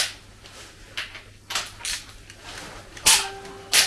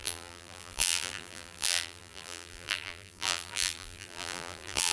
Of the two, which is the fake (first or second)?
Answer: second